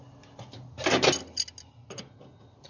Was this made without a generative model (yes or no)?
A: yes